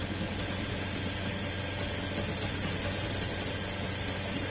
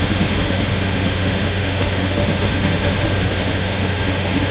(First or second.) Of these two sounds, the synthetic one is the second